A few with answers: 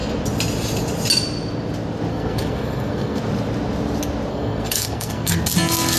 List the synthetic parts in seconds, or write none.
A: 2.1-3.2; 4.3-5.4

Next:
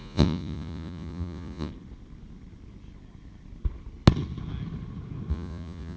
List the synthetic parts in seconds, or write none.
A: 0.0-1.7; 5.3-6.0

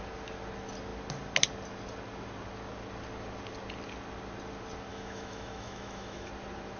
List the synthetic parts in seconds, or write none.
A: 4.9-6.3

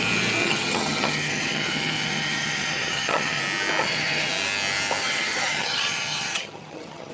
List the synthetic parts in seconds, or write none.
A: 0.4-3.4; 3.8-4.3; 5.0-7.1

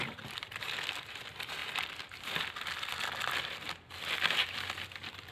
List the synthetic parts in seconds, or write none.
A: none

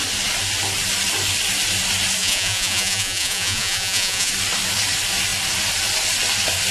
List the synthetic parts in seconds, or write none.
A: 2.2-4.3